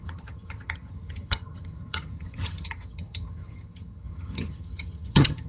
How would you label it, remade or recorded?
remade